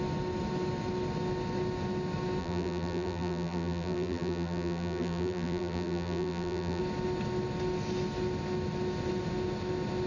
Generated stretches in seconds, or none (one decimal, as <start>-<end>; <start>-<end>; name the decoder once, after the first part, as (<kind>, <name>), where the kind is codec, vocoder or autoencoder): 2.4-6.8 (vocoder, BigVGAN v2)

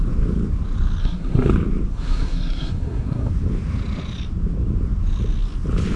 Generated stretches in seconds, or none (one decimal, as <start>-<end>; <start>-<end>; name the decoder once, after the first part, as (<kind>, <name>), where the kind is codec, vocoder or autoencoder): 1.0-1.5 (codec, SNAC); 1.9-3.3

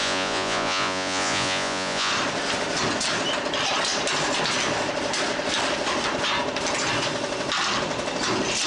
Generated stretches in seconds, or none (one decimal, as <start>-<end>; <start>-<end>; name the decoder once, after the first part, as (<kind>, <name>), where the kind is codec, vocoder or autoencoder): 0.0-2.1 (vocoder, Vocos)

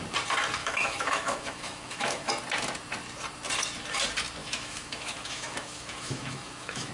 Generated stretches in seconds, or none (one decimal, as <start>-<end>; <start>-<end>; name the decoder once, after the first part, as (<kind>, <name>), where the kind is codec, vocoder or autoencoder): 0.6-2.3 (autoencoder, DAC-VAE); 4.4-6.9